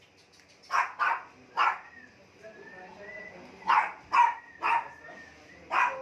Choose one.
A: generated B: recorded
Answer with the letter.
B